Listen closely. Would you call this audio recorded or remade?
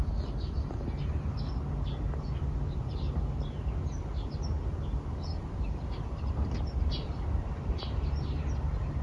recorded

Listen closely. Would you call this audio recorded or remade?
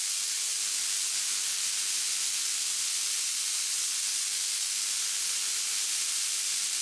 recorded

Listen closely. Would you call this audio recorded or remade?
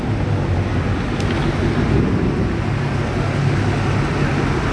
recorded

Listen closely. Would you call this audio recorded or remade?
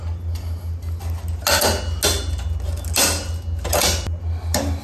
recorded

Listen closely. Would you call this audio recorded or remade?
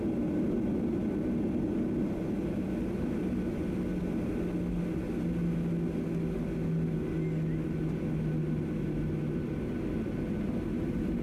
recorded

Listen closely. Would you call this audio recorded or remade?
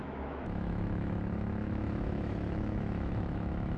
remade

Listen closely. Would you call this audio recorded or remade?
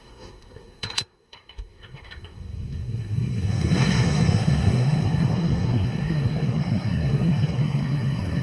remade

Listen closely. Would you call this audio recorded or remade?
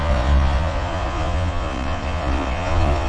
remade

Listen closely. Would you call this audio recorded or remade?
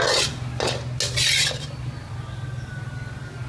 recorded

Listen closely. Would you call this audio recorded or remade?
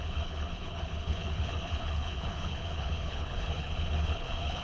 remade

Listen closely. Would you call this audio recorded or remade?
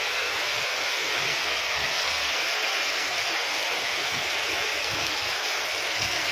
remade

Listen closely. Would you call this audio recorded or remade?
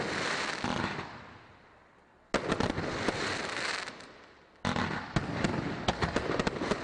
recorded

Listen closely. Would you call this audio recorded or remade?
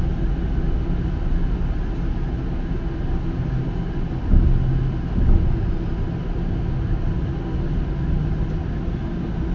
recorded